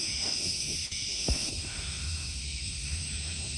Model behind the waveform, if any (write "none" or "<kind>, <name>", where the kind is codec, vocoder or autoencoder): autoencoder, DAC-VAE